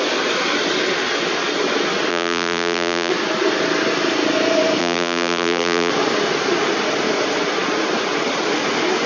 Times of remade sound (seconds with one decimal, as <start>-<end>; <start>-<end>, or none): 2.1-3.1; 4.8-5.9